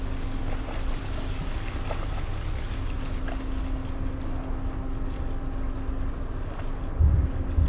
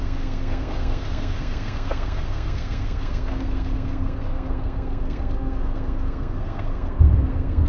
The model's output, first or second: second